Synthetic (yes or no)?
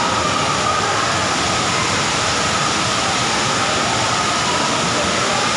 no